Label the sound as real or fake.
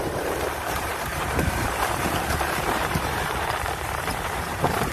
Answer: fake